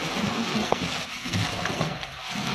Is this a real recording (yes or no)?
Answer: no